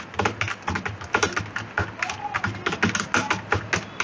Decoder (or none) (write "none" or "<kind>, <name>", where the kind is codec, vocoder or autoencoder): none